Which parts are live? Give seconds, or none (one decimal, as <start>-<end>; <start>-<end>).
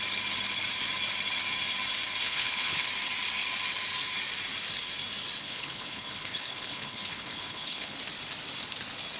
0.0-2.2; 2.9-5.4; 8.0-9.2